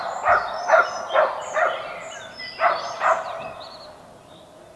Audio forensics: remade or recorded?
recorded